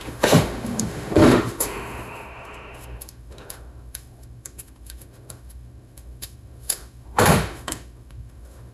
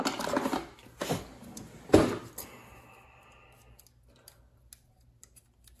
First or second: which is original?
second